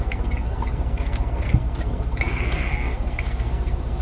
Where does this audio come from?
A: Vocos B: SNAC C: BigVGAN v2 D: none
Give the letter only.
B